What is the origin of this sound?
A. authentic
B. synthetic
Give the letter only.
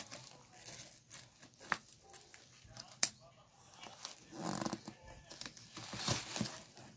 A